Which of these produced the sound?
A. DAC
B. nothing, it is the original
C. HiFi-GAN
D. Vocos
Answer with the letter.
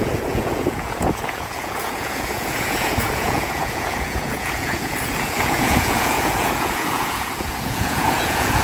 D